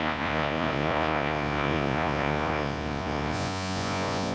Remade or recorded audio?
remade